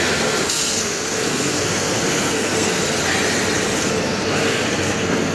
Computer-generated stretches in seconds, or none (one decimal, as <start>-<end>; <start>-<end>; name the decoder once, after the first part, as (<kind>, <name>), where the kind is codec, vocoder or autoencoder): 0.0-2.8 (codec, SNAC); 3.9-5.3